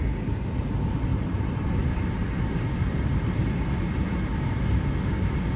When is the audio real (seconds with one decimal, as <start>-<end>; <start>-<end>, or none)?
0.0-1.1; 4.5-5.6